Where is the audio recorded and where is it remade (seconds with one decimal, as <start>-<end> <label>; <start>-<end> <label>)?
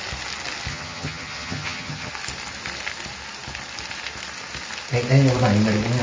0.0-0.7 recorded; 0.7-2.1 remade; 2.1-6.0 recorded